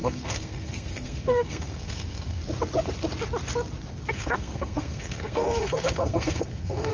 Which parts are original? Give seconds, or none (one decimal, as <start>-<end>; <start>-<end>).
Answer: 2.4-4.1